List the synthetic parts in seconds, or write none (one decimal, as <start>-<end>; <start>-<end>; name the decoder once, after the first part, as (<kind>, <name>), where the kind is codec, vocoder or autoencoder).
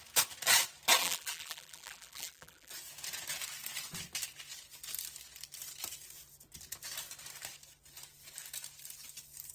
1.0-2.7 (vocoder, BigVGAN v2)